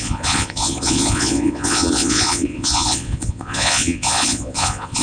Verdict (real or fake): fake